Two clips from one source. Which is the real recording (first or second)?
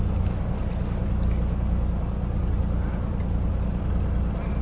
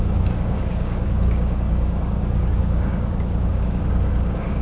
first